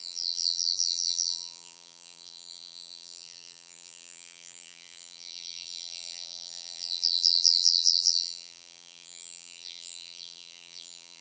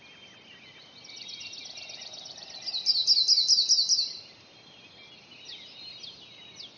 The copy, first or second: first